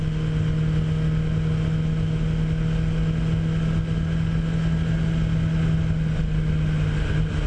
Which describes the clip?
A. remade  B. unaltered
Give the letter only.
B